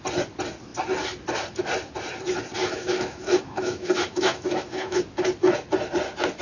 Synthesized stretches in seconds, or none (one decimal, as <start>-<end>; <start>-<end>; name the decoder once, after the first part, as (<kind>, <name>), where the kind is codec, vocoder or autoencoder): 2.6-5.0 (autoencoder, DAC-VAE)